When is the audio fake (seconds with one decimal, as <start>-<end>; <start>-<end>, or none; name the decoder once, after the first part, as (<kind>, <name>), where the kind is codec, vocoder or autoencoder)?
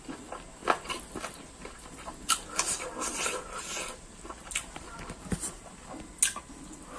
none